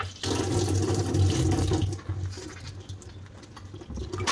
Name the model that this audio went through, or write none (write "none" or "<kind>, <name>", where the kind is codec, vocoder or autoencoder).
none